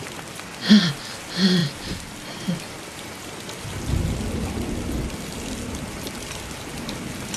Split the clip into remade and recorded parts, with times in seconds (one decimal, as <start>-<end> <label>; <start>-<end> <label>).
0.0-7.4 recorded